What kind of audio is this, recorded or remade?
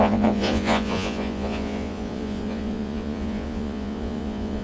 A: remade